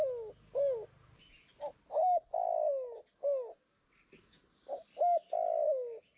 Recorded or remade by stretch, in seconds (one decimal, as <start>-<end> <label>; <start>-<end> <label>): 0.0-6.2 recorded